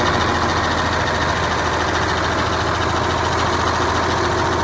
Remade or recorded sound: recorded